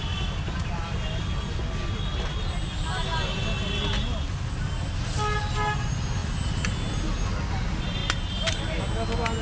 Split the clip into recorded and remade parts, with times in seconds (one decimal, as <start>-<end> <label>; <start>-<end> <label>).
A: 0.0-9.4 recorded